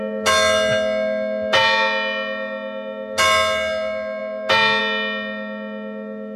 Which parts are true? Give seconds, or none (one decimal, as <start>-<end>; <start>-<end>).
0.0-6.4